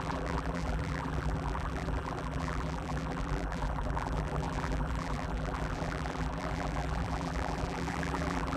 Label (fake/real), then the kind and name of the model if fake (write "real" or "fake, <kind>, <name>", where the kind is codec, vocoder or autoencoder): fake, vocoder, BigVGAN v2